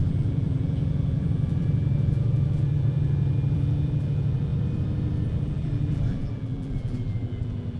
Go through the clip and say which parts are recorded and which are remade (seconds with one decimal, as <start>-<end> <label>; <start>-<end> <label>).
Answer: 0.0-4.5 remade; 4.5-5.3 recorded; 5.3-7.8 remade